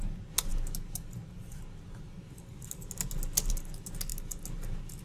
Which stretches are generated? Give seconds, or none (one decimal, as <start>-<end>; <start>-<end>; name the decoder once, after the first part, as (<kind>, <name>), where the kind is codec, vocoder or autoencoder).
none